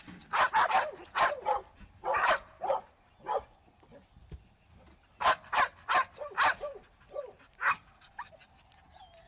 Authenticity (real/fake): real